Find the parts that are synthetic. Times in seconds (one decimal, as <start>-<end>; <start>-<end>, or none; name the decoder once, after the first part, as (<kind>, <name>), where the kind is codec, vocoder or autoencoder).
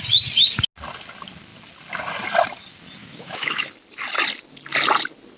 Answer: 3.0-3.7 (autoencoder, DAC-VAE)